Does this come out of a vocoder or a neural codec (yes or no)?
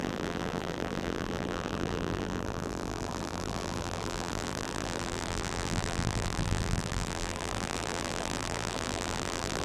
yes